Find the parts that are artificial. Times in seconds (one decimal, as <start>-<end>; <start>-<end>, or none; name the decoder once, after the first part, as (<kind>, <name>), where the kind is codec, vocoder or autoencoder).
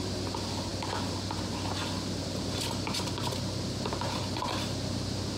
none